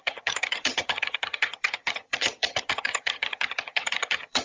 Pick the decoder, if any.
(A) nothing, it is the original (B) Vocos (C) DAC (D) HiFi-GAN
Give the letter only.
D